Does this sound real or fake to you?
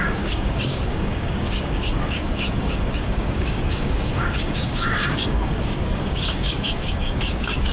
fake